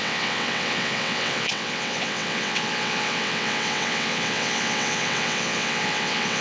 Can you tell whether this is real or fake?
fake